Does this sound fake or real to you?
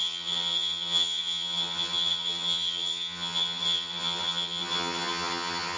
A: fake